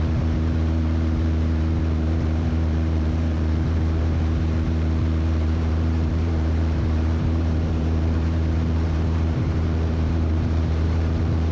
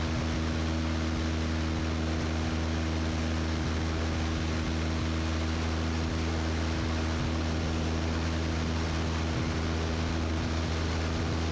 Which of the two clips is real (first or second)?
second